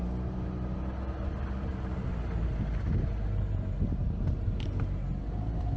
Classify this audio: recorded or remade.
recorded